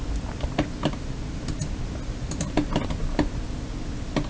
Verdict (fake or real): real